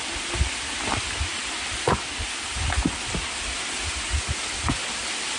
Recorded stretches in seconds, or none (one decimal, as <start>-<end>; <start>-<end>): 0.0-5.4